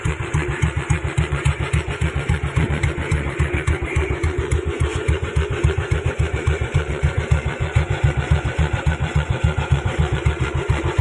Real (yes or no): no